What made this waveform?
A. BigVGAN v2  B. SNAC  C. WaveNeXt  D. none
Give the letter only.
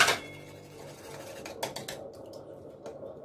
D